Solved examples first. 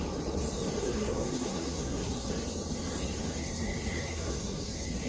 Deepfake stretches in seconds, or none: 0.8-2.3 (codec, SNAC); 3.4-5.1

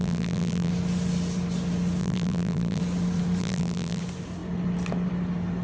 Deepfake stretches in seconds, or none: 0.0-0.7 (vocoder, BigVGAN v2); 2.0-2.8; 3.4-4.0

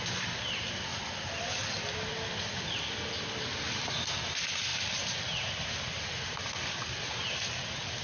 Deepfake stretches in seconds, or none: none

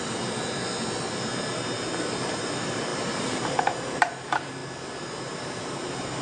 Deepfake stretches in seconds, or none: 0.0-0.6 (vocoder, BigVGAN v2); 1.2-4.6; 5.2-6.2

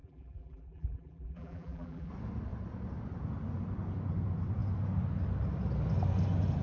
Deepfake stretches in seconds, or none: 0.0-2.1 (vocoder, BigVGAN v2)

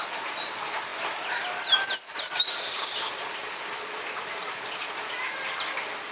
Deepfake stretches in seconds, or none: none